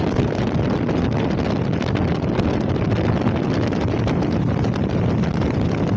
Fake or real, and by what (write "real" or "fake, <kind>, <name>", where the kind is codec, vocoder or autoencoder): real